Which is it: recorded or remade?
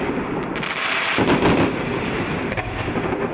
remade